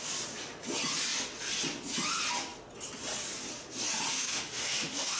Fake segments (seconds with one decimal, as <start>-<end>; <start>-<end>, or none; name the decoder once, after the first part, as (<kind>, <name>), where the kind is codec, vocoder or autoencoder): 4.1-5.2 (autoencoder, DAC-VAE)